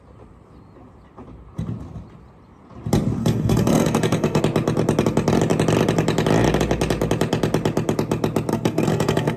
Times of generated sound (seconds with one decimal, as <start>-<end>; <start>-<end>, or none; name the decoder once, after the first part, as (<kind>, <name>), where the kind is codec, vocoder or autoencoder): 3.2-4.4 (codec, SNAC); 8.5-9.4